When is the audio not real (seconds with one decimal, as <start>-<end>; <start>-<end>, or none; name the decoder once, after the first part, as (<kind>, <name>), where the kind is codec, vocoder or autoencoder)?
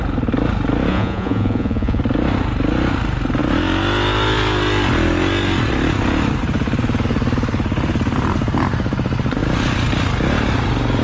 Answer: 0.9-2.0 (vocoder, Vocos)